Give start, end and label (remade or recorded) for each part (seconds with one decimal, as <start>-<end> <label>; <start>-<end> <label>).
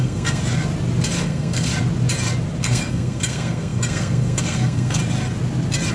0.0-0.4 remade; 0.4-1.2 recorded; 1.2-1.7 remade; 1.7-2.6 recorded; 2.6-5.0 remade; 5.0-5.9 recorded